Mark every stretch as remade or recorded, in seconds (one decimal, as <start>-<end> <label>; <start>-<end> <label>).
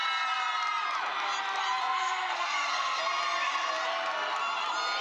0.0-1.8 recorded; 1.8-3.0 remade; 3.0-5.0 recorded